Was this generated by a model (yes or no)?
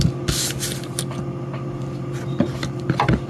no